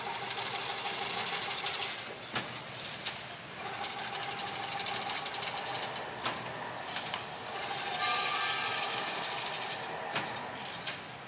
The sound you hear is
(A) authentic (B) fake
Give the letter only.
A